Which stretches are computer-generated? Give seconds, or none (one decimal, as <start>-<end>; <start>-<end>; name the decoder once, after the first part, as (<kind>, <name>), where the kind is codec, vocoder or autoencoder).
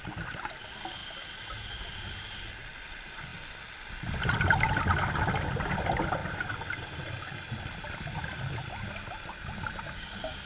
0.0-1.0 (vocoder, BigVGAN v2); 1.7-3.3; 4.1-10.5